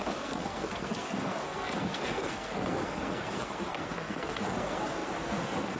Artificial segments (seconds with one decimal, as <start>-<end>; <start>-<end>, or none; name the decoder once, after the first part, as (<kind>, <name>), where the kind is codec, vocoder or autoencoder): 0.0-5.8 (codec, SNAC)